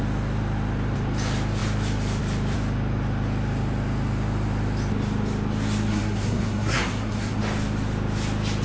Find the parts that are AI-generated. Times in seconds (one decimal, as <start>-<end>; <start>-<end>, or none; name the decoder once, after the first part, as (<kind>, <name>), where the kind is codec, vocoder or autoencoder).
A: 5.9-7.4 (codec, SNAC)